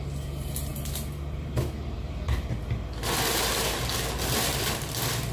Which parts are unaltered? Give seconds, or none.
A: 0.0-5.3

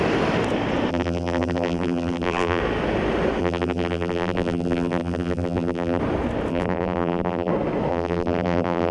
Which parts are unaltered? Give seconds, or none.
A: 0.0-0.9; 2.6-3.4; 6.0-6.5; 7.5-7.9

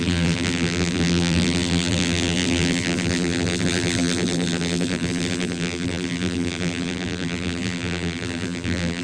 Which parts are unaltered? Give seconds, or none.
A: none

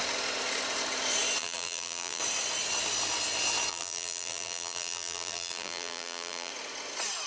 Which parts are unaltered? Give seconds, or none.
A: 0.0-1.4; 2.2-3.7; 6.5-7.3

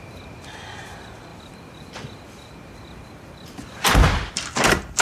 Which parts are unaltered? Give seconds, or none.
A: 0.0-1.3; 4.3-5.0

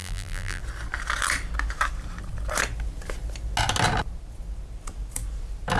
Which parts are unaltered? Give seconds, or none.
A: 0.6-5.8

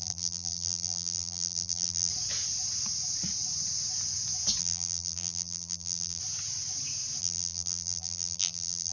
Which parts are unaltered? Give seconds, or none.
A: 2.1-4.6; 6.2-7.2